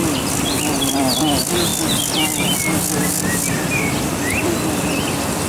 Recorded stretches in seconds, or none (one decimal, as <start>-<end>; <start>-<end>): 0.0-0.8; 1.7-3.5